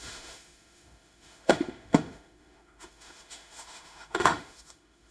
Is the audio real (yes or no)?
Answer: no